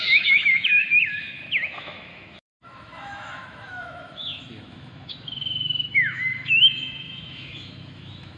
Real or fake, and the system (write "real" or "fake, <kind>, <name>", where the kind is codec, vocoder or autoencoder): fake, autoencoder, DAC-VAE